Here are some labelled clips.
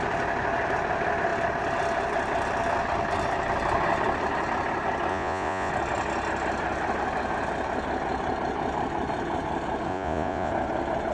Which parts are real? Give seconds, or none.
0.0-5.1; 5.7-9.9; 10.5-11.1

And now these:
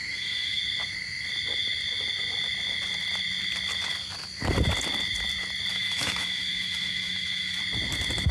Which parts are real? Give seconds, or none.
0.6-5.7; 7.6-8.3

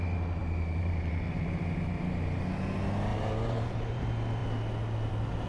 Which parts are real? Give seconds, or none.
0.0-0.4; 1.1-3.1; 4.0-5.5

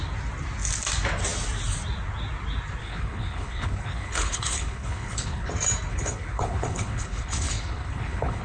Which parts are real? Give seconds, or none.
0.0-2.8; 5.5-5.9

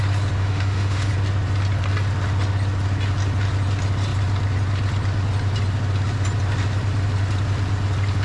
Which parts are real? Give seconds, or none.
0.0-0.4; 1.1-8.2

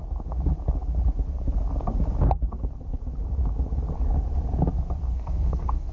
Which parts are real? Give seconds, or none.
0.0-5.1

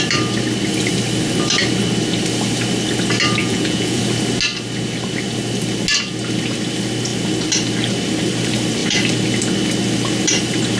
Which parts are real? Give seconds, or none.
0.0-3.4; 4.0-10.8